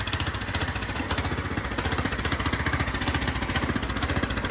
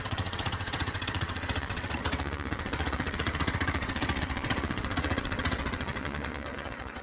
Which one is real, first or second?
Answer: first